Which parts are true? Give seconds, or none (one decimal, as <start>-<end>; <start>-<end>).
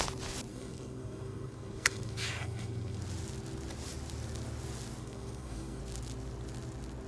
0.0-0.5; 3.0-5.0; 5.8-7.1